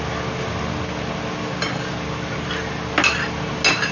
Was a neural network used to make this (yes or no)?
no